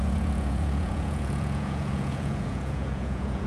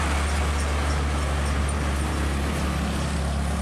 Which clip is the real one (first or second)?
second